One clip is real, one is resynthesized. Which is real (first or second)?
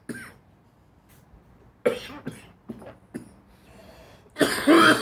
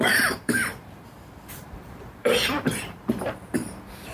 first